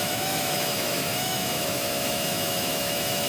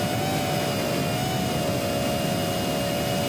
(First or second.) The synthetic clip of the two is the first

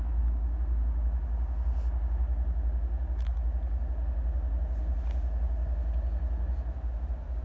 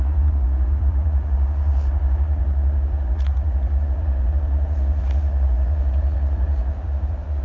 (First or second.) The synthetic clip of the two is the second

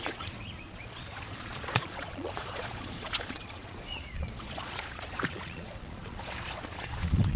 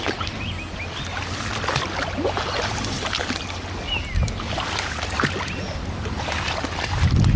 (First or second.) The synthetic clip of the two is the first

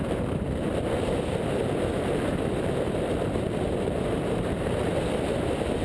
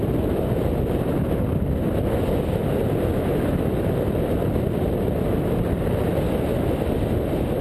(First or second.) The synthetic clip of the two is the first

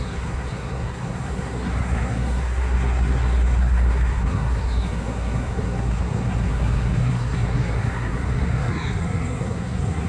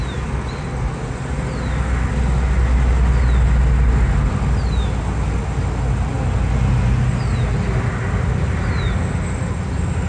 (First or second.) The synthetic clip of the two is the first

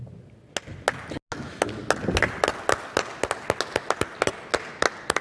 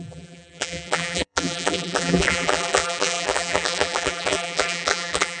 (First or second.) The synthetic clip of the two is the second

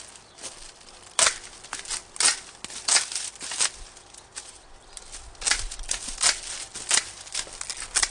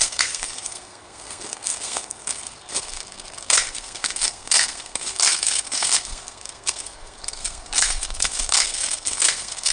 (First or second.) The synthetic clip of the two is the second